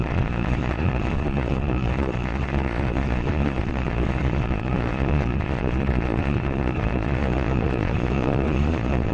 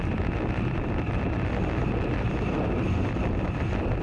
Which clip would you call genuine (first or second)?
second